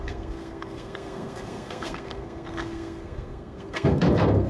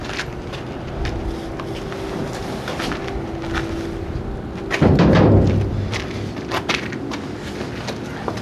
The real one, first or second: second